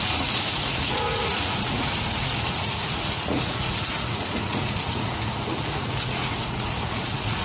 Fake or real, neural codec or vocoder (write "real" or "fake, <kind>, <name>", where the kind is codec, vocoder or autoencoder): fake, vocoder, Vocos